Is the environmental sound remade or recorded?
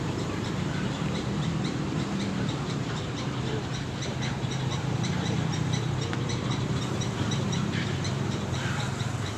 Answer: remade